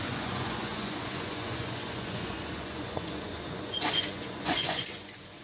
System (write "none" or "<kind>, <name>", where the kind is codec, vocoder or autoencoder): vocoder, Vocos